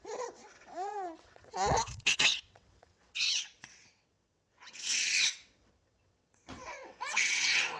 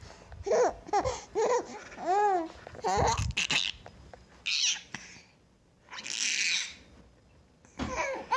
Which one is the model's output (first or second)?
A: first